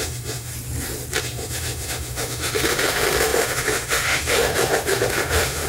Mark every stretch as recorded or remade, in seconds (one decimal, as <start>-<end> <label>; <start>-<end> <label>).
0.0-0.5 remade; 0.5-1.2 recorded; 1.2-5.7 remade